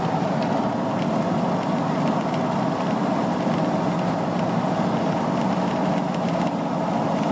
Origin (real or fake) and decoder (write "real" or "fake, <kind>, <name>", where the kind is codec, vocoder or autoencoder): real